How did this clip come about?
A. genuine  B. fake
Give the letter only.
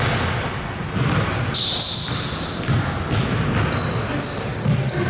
A